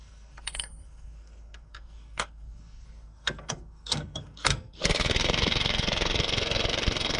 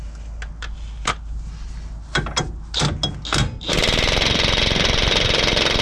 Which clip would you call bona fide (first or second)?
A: second